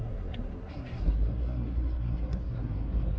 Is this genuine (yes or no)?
no